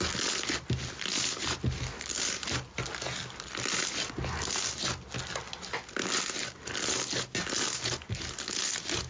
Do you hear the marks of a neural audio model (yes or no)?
no